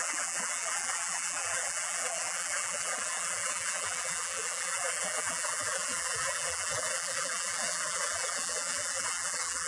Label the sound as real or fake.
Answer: fake